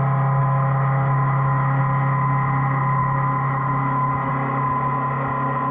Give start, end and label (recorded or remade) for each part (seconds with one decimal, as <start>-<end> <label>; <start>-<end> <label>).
0.0-0.4 recorded; 0.4-1.8 remade; 1.8-3.0 recorded; 3.0-4.3 remade; 4.3-5.7 recorded

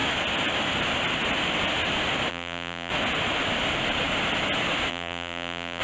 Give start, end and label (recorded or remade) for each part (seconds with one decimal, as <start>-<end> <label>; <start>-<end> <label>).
0.0-2.3 recorded; 2.3-2.9 remade; 2.9-4.9 recorded; 4.9-5.8 remade

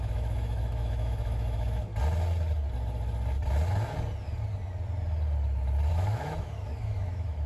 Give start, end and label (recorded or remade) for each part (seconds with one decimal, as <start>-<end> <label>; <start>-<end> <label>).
0.0-1.9 remade; 1.9-5.9 recorded; 5.9-7.5 remade

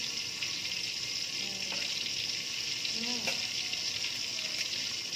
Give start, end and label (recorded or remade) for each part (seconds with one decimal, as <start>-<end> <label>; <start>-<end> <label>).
0.0-5.2 recorded

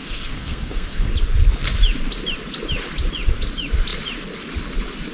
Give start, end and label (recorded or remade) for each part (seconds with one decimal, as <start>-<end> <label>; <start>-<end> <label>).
0.0-1.1 remade; 1.1-5.1 recorded

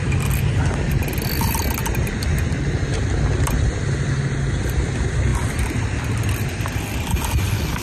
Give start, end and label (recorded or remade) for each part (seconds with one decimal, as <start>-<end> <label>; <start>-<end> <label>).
0.0-7.8 recorded

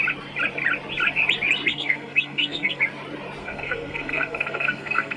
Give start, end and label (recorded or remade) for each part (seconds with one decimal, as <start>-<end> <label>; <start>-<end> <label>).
0.0-1.7 recorded; 1.7-2.8 remade; 2.8-3.4 recorded; 3.4-5.2 remade

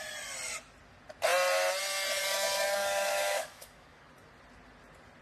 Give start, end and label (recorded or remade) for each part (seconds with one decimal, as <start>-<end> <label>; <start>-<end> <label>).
0.0-2.2 recorded; 2.2-4.1 remade; 4.1-5.2 recorded